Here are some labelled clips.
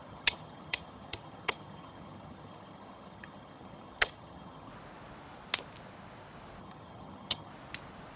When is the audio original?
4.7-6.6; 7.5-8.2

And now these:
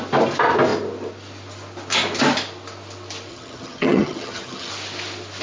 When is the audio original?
0.0-3.3; 4.7-5.4

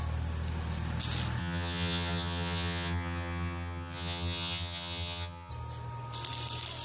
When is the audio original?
0.0-1.4; 5.5-6.8

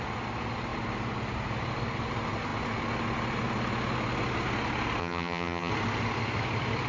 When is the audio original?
0.0-5.0; 5.7-6.9

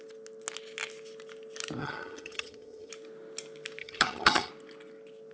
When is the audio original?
0.0-1.8; 2.9-3.8; 4.5-5.3